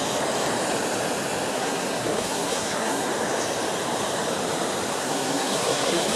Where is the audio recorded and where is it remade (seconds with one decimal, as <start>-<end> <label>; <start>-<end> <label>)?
0.0-1.5 recorded; 1.5-3.1 remade; 3.1-4.9 recorded; 4.9-6.2 remade